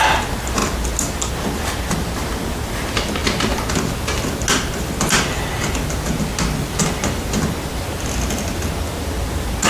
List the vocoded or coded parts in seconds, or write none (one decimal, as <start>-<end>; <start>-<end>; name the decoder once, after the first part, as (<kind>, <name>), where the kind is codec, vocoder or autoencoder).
none